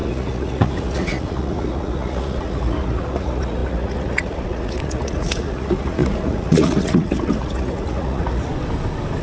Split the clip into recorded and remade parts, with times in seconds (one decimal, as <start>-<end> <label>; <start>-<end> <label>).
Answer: 0.0-8.5 remade; 8.5-9.2 recorded